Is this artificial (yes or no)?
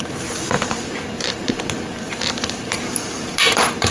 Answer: yes